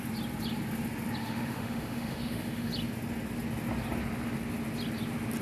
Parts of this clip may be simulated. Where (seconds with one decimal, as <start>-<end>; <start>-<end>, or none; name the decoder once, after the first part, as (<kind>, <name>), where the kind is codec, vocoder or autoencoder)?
1.2-2.7 (autoencoder, DAC-VAE)